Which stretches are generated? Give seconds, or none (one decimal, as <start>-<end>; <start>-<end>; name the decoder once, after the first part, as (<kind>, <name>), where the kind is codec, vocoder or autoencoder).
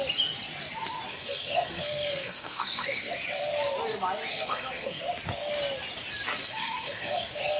1.1-3.1 (codec, SNAC); 4.3-5.0; 6.4-7.6